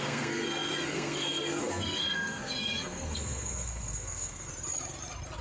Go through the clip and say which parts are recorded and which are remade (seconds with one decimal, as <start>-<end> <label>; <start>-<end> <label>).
0.0-4.5 remade; 4.5-5.4 recorded